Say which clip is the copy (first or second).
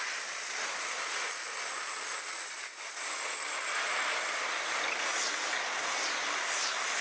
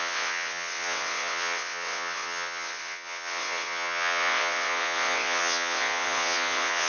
second